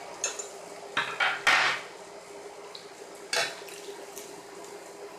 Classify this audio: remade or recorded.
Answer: recorded